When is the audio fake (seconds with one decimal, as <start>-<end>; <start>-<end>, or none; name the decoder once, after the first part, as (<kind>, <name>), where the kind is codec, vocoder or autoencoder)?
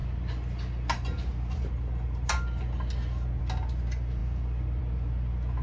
none